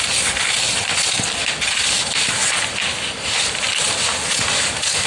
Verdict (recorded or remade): recorded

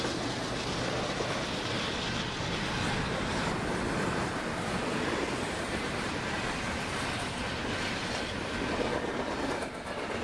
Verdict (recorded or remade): recorded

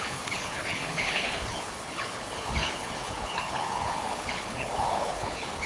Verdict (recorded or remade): remade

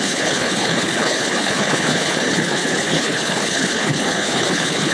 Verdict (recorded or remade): remade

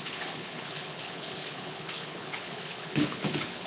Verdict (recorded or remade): remade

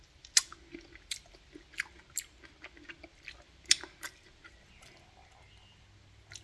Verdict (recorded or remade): recorded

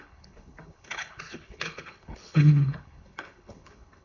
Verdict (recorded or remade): remade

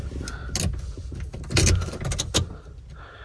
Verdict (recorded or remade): recorded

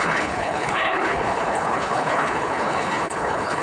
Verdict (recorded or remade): remade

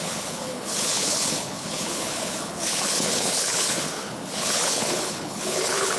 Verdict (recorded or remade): remade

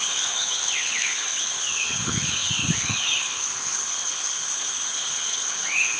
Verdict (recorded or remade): remade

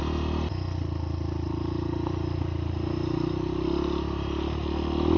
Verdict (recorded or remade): recorded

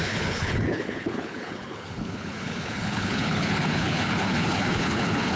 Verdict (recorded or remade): remade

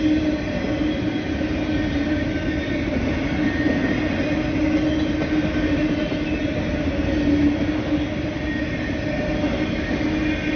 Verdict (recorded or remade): recorded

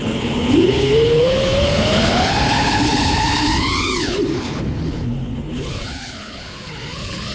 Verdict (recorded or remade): remade